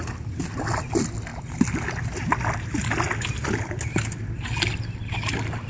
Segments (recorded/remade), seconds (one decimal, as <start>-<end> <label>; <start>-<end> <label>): 0.0-5.7 recorded